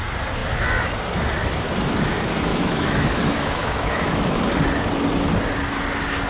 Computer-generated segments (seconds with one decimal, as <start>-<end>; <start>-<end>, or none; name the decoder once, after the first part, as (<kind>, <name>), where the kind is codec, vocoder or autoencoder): 2.5-4.3 (autoencoder, DAC-VAE)